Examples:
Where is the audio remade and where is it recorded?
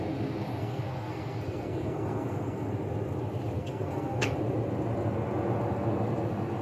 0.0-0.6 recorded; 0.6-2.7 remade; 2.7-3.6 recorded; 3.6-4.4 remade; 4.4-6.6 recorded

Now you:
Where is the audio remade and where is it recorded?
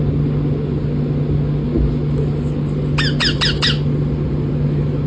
0.0-5.1 recorded